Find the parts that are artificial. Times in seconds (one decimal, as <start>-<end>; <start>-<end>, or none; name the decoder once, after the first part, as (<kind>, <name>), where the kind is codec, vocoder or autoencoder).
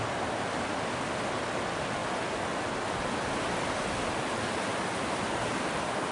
none